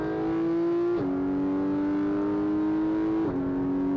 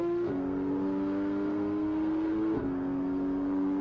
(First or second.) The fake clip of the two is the second